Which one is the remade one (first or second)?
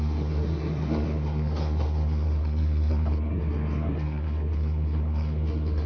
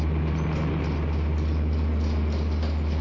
first